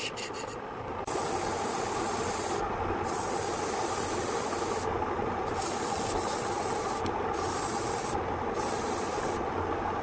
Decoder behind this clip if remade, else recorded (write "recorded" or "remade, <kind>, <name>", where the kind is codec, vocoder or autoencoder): recorded